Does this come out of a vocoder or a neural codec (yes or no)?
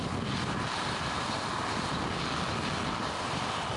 no